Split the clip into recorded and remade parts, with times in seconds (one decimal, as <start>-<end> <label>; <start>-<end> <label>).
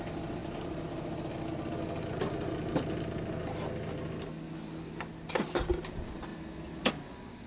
0.0-7.5 recorded